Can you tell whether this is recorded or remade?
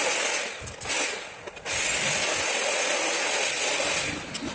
recorded